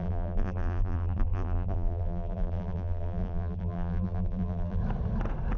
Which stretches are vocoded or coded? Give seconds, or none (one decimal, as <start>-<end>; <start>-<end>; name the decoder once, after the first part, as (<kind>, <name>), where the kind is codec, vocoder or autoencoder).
0.0-4.8 (vocoder, BigVGAN v2)